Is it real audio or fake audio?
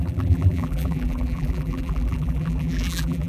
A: fake